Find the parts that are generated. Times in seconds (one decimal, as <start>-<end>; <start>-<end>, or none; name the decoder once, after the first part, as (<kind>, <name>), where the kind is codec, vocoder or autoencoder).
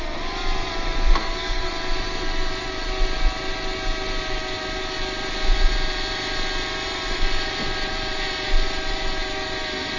1.2-1.7 (codec, SNAC)